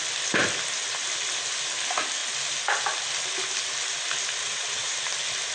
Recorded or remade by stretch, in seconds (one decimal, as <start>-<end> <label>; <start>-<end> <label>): 0.0-4.4 recorded; 4.4-4.9 remade; 4.9-5.5 recorded